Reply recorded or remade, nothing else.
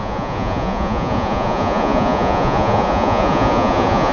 remade